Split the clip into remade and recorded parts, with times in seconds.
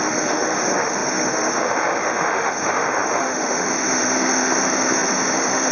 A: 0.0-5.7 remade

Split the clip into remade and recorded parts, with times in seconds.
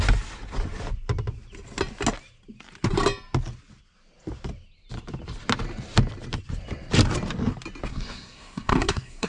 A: 0.0-7.9 recorded; 7.9-9.3 remade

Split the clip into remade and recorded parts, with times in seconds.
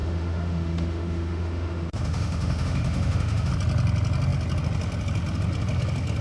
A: 0.0-3.5 remade; 3.5-6.2 recorded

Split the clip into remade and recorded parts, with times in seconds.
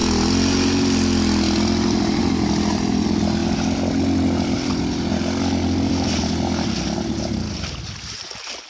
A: 0.0-8.7 recorded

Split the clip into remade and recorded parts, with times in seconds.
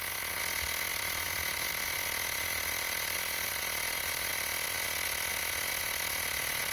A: 0.0-0.9 recorded; 0.9-4.3 remade; 4.3-6.7 recorded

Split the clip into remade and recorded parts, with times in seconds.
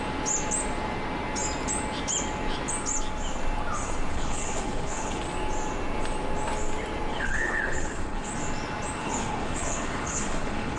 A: 0.0-4.1 recorded; 4.1-5.2 remade; 5.2-7.1 recorded; 7.1-8.3 remade; 8.3-9.0 recorded; 9.0-10.8 remade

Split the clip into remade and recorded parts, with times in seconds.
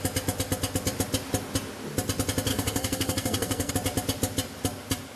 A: 0.0-2.5 recorded; 2.5-3.7 remade; 3.7-5.2 recorded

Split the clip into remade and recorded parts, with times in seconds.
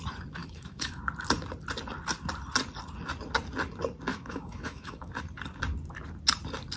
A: 0.0-0.4 recorded; 0.4-1.0 remade; 1.0-4.1 recorded; 4.1-5.1 remade; 5.1-6.8 recorded